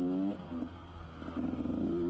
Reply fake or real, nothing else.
real